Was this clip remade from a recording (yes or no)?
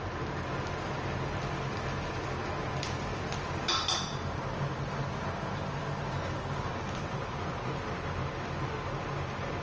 no